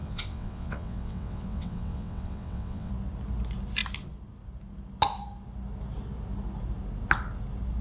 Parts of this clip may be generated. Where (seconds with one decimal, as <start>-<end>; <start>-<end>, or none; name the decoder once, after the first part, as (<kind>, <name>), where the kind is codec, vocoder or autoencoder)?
0.0-2.9 (vocoder, WaveNeXt)